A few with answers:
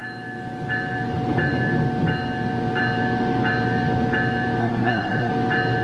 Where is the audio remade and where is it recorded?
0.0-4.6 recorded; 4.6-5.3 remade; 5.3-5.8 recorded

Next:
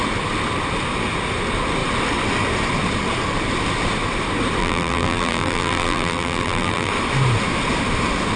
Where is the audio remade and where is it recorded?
0.0-4.6 recorded; 4.6-6.9 remade; 6.9-8.4 recorded